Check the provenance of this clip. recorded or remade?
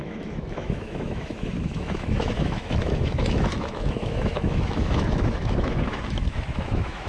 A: remade